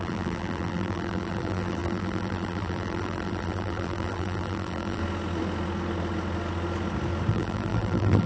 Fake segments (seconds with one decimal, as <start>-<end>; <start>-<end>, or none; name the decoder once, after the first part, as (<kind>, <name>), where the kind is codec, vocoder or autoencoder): 0.0-5.0 (vocoder, BigVGAN v2); 7.3-8.3